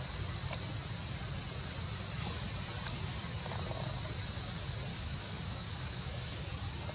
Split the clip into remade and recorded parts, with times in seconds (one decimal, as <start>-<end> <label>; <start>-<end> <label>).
0.0-4.9 recorded; 4.9-6.4 remade; 6.4-6.9 recorded